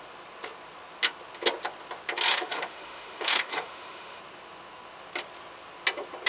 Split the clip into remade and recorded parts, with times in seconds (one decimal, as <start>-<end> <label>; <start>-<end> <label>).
0.0-2.3 recorded; 2.3-4.2 remade; 4.2-6.3 recorded